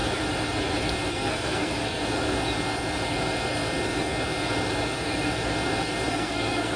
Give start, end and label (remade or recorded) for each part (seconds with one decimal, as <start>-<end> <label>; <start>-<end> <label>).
0.0-1.1 recorded; 1.1-2.0 remade; 2.0-6.1 recorded; 6.1-6.8 remade